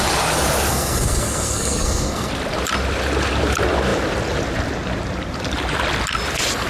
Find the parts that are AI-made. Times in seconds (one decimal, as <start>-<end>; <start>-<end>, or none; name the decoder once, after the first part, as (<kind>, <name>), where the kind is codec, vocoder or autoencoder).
0.7-2.3 (codec, SNAC)